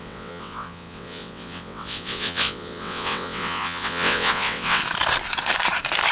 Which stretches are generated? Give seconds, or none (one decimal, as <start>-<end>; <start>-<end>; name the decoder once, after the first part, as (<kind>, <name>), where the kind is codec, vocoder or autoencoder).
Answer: 0.0-4.8 (vocoder, WaveNeXt)

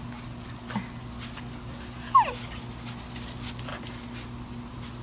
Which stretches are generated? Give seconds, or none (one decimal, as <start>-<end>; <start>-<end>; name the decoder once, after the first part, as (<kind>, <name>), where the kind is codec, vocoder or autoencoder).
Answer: none

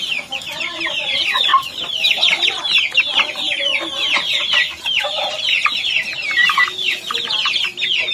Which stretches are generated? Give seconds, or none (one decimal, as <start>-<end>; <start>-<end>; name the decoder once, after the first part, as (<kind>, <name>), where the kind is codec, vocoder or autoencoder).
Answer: 1.5-2.6 (vocoder, BigVGAN v2)

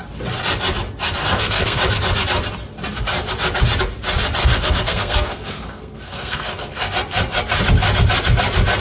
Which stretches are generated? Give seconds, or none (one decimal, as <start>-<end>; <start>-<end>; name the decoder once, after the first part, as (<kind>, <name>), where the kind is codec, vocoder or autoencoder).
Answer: 1.2-1.8 (codec, SNAC); 4.4-6.9